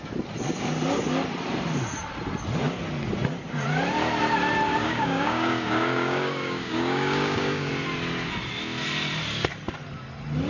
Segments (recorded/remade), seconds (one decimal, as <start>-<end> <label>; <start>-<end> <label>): 0.0-4.8 recorded; 4.8-7.7 remade; 7.7-10.5 recorded